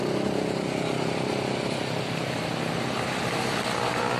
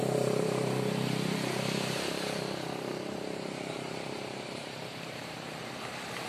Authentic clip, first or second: first